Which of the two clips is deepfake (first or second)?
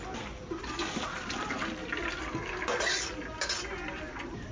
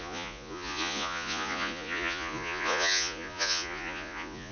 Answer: second